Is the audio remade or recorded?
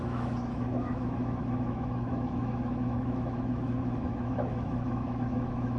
remade